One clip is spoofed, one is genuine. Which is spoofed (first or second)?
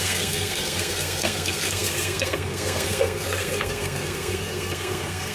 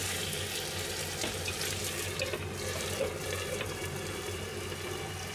first